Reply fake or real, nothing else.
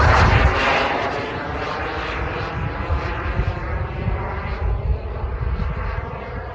real